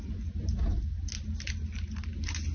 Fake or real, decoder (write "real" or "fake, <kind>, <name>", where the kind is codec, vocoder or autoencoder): real